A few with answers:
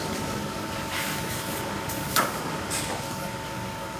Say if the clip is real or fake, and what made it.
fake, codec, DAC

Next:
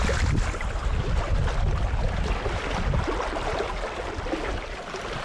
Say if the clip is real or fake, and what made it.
real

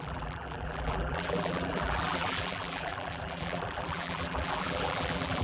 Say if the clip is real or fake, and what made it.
fake, vocoder, BigVGAN v2